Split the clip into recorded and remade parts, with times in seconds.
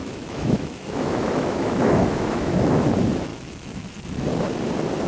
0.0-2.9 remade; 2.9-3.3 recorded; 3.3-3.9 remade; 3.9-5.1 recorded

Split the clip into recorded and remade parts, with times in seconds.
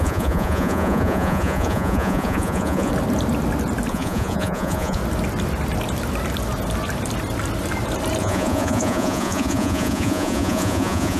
0.0-2.9 remade; 2.9-3.9 recorded; 3.9-5.0 remade; 5.0-8.2 recorded; 8.2-11.2 remade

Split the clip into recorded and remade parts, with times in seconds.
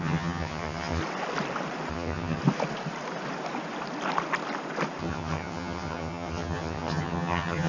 0.0-1.0 remade; 1.0-1.9 recorded; 1.9-2.4 remade; 2.4-5.0 recorded; 5.0-7.7 remade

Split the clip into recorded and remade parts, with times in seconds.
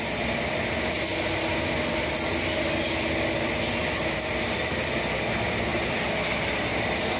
0.0-7.2 recorded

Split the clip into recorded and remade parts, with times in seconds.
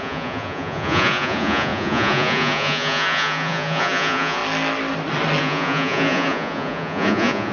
0.0-4.4 remade; 4.4-5.4 recorded; 5.4-7.5 remade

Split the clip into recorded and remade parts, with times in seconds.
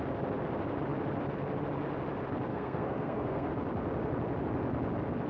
0.0-2.5 recorded; 2.5-3.5 remade; 3.5-5.3 recorded